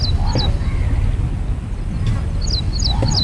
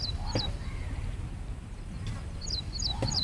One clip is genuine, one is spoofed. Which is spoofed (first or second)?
second